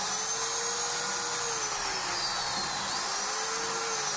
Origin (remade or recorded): recorded